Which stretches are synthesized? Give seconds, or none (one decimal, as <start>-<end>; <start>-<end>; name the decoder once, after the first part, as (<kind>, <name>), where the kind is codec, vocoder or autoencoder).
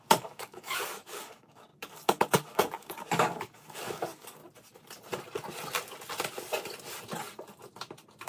0.0-4.4 (codec, DAC)